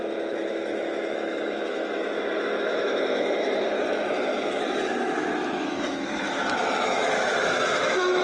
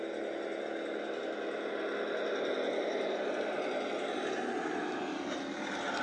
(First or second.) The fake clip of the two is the first